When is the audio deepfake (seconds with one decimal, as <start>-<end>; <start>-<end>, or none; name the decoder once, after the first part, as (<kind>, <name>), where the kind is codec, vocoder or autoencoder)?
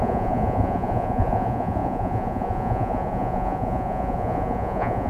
0.0-5.1 (vocoder, Vocos)